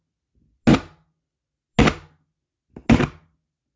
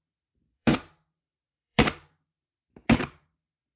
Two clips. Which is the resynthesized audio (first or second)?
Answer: second